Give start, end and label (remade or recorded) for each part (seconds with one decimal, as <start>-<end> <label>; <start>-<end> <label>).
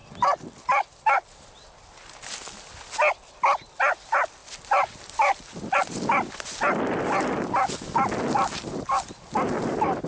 0.0-10.1 recorded